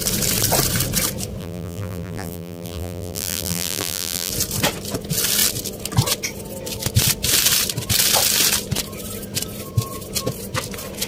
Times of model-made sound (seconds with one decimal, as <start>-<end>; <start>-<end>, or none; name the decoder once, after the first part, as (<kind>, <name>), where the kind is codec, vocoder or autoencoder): 1.4-4.3 (vocoder, BigVGAN v2)